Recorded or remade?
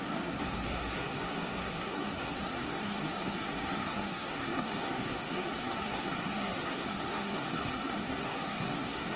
remade